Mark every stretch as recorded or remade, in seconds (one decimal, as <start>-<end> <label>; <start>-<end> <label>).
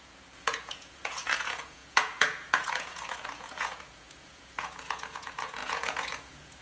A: 0.0-6.6 remade